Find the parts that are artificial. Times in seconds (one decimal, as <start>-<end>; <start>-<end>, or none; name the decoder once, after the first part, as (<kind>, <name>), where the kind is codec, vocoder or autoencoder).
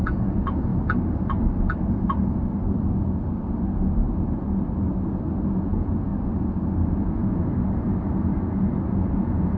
0.0-0.7 (vocoder, Vocos); 5.6-6.1; 9.1-9.6